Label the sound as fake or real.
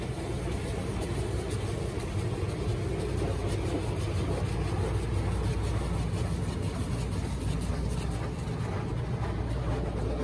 real